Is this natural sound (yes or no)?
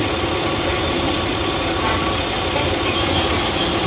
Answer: yes